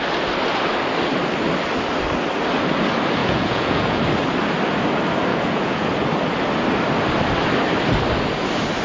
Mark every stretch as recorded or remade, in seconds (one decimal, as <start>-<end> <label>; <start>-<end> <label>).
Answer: 0.0-3.2 recorded; 3.2-4.0 remade; 4.0-5.3 recorded; 5.3-5.9 remade; 5.9-8.8 recorded